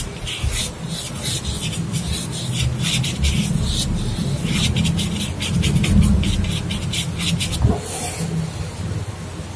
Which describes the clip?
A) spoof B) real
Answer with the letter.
B